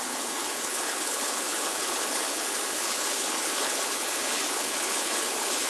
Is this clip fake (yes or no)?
yes